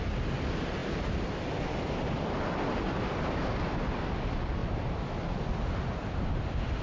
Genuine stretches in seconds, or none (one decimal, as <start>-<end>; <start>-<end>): 0.0-6.8